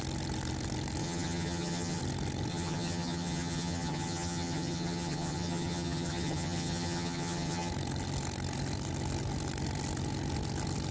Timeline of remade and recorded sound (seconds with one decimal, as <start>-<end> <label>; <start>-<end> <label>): 0.0-1.0 recorded; 1.0-2.0 remade; 2.0-2.5 recorded; 2.5-7.7 remade; 7.7-10.9 recorded